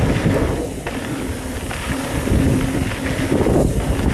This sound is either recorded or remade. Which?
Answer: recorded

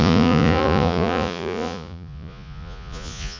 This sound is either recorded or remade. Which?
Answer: remade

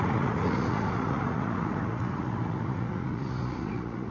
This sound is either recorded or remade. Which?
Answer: remade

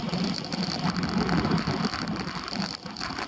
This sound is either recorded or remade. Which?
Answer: recorded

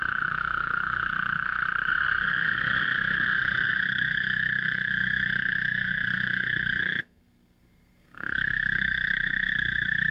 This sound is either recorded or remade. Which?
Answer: remade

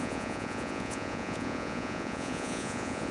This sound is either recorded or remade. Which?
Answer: remade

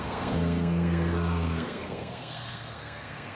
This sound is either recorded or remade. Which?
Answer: remade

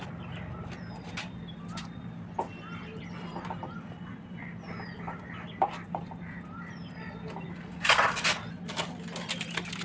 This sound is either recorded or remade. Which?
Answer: recorded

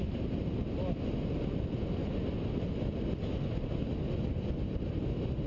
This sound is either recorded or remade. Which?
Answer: recorded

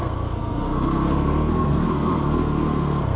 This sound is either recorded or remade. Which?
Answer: remade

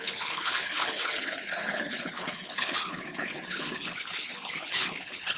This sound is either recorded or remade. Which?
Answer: remade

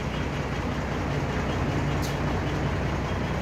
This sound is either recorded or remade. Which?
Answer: recorded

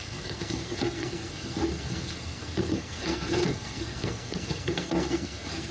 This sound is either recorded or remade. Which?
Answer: remade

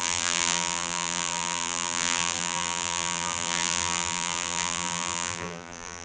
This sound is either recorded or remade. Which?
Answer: remade